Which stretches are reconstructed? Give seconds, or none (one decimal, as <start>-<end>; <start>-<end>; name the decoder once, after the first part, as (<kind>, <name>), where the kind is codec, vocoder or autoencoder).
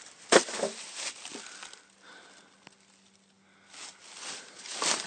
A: none